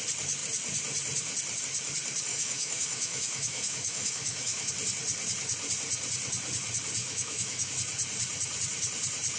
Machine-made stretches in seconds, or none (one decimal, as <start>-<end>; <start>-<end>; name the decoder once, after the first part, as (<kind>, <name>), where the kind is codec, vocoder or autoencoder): 2.3-4.7 (autoencoder, DAC-VAE); 7.0-7.7